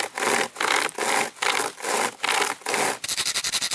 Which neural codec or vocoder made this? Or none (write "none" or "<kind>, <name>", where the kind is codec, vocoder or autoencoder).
none